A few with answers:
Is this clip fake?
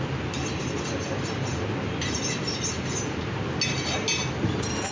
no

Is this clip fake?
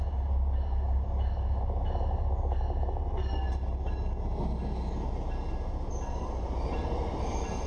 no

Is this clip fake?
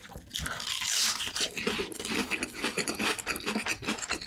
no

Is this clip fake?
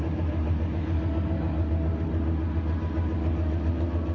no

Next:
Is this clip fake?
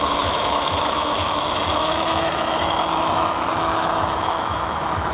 yes